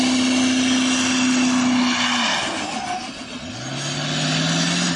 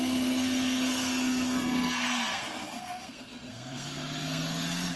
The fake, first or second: second